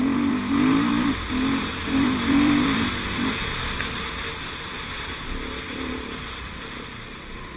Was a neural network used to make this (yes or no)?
yes